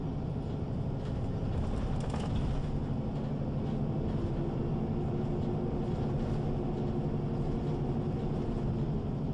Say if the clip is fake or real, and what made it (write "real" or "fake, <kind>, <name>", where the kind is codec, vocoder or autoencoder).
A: real